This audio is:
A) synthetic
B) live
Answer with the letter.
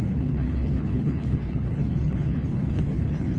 A